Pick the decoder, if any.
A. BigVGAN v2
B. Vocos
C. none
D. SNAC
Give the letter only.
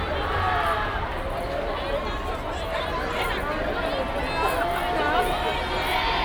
C